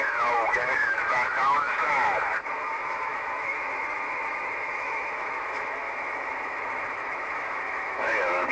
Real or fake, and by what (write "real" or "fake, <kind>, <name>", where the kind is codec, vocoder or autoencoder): fake, autoencoder, DAC-VAE